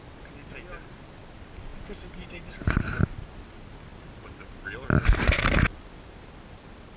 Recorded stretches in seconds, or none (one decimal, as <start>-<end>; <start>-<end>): 0.0-1.7; 2.5-3.9; 5.3-7.0